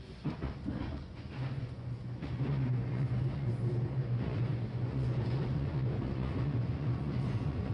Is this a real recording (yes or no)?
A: no